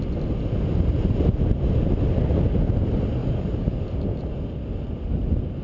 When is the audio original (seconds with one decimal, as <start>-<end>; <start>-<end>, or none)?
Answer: 0.0-3.2; 3.8-5.6